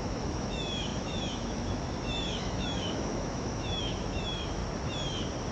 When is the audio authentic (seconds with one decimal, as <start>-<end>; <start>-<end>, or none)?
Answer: 4.6-5.5